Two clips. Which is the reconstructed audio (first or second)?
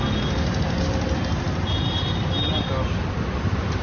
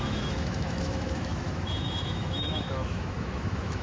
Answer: second